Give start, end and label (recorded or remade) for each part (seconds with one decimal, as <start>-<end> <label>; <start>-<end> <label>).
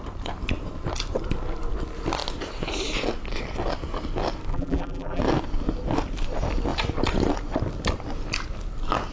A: 0.0-4.5 recorded; 4.5-5.2 remade; 5.2-9.1 recorded